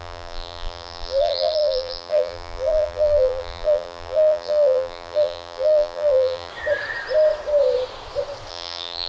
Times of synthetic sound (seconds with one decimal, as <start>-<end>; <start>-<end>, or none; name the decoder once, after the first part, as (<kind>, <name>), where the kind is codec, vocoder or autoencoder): 0.0-6.5 (vocoder, BigVGAN v2); 8.5-9.1